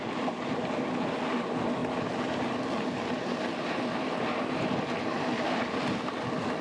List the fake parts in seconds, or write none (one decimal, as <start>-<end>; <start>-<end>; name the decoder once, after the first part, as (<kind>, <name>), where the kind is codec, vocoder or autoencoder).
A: none